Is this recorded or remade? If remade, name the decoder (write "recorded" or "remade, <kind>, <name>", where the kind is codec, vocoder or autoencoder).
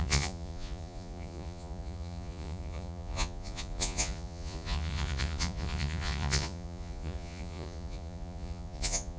remade, vocoder, Vocos